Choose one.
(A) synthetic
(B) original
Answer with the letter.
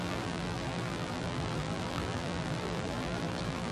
A